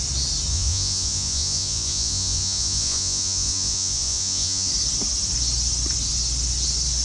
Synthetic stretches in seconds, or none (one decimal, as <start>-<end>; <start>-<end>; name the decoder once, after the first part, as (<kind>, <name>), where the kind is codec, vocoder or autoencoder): 0.5-4.7 (vocoder, Vocos)